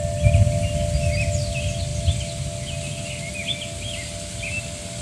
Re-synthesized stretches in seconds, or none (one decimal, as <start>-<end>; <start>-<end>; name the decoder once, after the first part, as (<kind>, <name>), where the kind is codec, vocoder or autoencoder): none